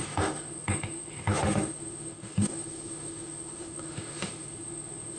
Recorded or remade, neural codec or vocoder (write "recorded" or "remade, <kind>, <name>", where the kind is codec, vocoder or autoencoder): remade, autoencoder, DAC-VAE